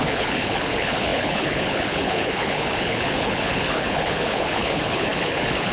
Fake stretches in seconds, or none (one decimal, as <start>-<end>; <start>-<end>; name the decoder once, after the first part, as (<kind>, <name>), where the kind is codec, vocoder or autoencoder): 0.0-5.7 (codec, HILCodec)